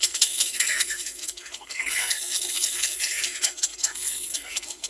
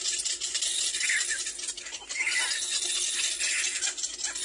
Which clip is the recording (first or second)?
second